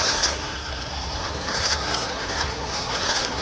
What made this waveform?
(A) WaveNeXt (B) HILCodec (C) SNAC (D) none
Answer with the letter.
C